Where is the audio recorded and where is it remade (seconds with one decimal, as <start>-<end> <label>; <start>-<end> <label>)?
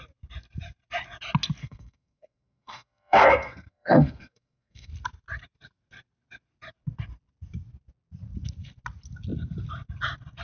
0.0-1.6 recorded; 1.6-4.9 remade; 4.9-10.4 recorded